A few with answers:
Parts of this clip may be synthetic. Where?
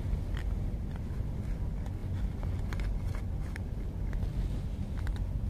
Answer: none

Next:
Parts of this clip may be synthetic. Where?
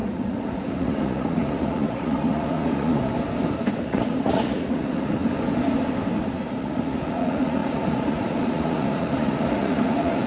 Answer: 0.0-3.1 (vocoder, Vocos); 3.8-5.2; 6.6-10.3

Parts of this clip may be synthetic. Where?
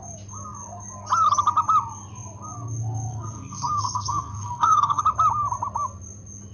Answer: 3.1-5.0 (codec, SNAC)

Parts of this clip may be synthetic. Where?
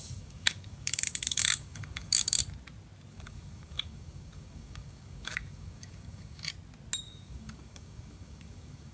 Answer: 0.0-2.4 (codec, DAC); 3.1-6.5; 7.0-8.9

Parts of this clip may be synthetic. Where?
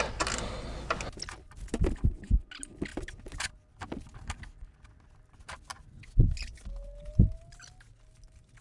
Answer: none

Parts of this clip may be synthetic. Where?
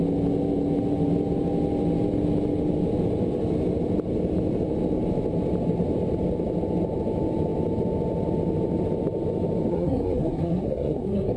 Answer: 9.7-11.4 (codec, SNAC)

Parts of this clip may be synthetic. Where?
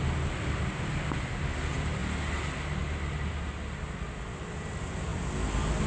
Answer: none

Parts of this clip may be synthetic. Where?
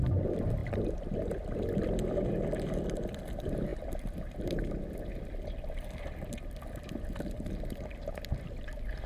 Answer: none